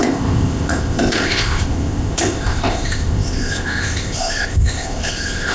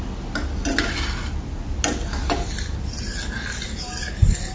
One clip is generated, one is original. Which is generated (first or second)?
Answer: first